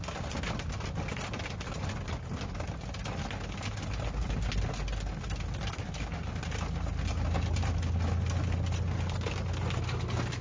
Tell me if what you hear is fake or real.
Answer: real